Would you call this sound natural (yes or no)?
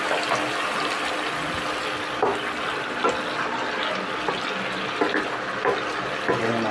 yes